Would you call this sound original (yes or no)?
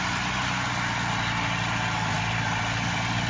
yes